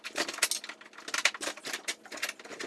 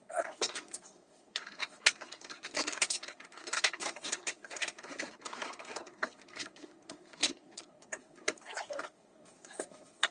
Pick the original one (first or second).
first